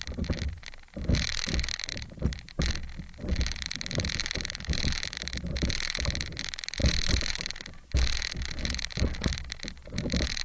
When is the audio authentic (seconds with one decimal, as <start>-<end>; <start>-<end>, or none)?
0.0-10.4